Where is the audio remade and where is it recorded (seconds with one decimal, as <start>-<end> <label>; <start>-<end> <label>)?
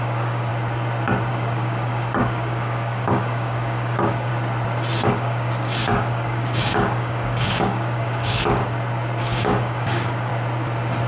0.0-0.5 remade; 0.5-1.3 recorded; 1.3-4.3 remade; 4.3-5.0 recorded; 5.0-8.6 remade; 8.6-9.2 recorded; 9.2-10.3 remade; 10.3-11.1 recorded